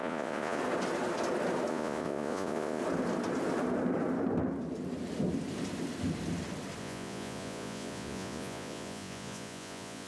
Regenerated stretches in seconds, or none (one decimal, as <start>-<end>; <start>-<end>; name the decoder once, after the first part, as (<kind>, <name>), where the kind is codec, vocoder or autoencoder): 0.0-0.6 (vocoder, Vocos); 1.7-2.8; 6.8-10.1